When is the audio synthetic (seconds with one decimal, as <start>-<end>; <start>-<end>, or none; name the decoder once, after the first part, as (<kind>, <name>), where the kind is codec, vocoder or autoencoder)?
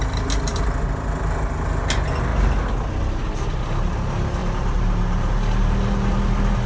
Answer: 4.4-5.3 (vocoder, BigVGAN v2)